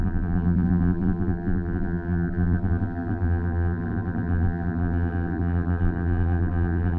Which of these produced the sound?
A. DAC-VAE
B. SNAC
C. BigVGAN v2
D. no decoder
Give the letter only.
C